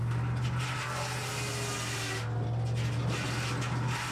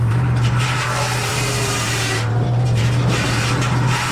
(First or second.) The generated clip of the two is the second